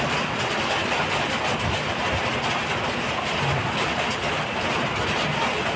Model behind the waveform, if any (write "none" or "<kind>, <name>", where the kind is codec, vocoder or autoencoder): none